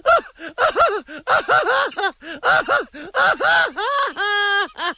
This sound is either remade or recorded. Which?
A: recorded